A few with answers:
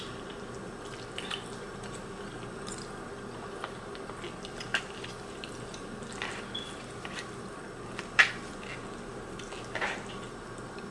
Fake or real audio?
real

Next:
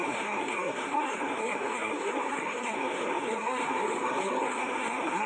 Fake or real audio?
fake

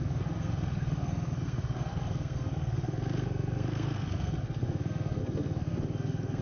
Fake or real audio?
fake